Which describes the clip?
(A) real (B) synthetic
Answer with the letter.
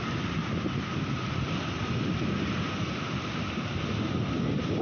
A